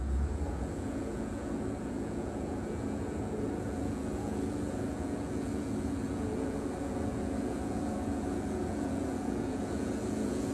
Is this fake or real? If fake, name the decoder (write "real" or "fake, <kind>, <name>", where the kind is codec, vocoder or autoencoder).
fake, vocoder, Vocos